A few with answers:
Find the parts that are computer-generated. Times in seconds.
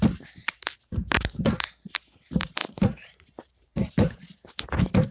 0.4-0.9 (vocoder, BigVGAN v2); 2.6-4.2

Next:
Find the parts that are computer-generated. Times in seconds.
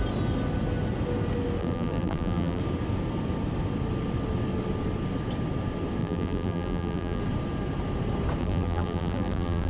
1.6-2.6 (vocoder, BigVGAN v2); 6.0-7.2; 8.4-9.7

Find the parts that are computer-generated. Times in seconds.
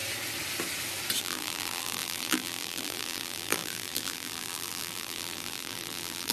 1.2-6.3 (vocoder, BigVGAN v2)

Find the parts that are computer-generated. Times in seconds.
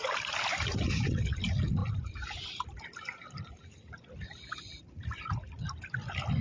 none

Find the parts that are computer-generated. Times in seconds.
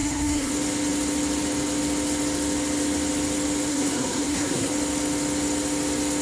0.0-0.5 (codec, SNAC); 3.7-4.7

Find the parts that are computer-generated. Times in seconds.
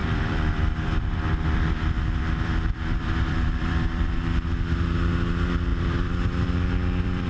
0.0-4.2 (vocoder, BigVGAN v2); 5.7-7.3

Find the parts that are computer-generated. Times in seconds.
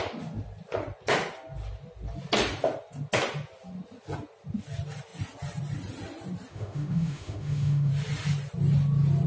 6.5-7.9 (autoencoder, DAC-VAE)